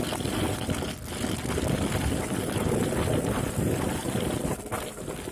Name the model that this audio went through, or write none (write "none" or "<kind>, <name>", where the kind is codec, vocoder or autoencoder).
none